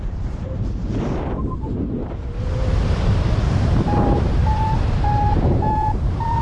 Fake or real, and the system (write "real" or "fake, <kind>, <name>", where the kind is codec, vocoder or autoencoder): fake, vocoder, BigVGAN v2